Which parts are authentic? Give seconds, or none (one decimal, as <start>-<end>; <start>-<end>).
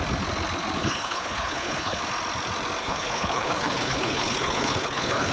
0.0-0.8; 2.0-2.8